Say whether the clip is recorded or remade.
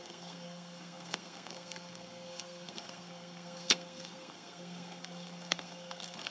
remade